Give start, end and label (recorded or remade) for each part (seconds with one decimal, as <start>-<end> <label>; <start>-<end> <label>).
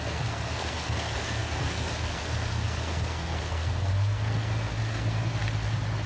0.0-5.3 remade; 5.3-6.1 recorded